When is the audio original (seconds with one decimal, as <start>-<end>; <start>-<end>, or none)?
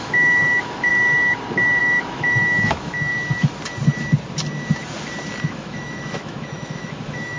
0.9-1.8; 3.1-5.4